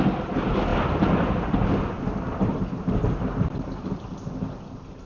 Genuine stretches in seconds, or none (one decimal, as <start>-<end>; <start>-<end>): 0.0-5.1

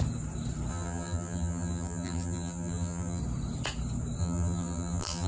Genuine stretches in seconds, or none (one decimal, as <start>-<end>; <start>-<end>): 0.0-0.7; 3.2-4.2